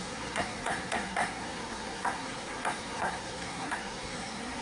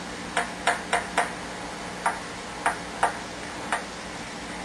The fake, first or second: first